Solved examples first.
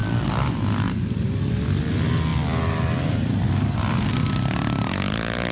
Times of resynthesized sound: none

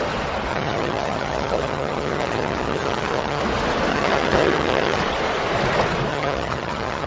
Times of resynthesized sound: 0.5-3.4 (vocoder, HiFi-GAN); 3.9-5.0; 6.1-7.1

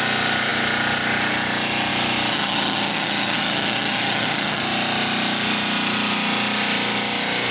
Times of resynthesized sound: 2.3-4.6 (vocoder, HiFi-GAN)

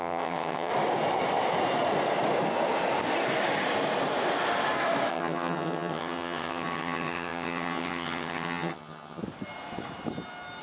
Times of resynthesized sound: 0.0-0.7 (vocoder, HiFi-GAN); 5.1-9.2

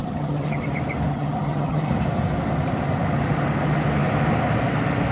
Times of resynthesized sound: 0.0-0.7 (vocoder, HiFi-GAN); 1.1-1.9

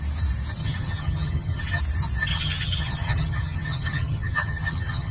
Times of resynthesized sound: 0.6-1.8 (vocoder, HiFi-GAN); 2.3-5.1

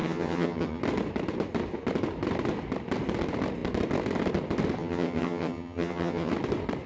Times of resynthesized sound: 0.0-0.8 (vocoder, HiFi-GAN); 4.8-6.3